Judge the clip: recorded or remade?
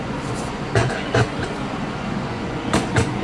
remade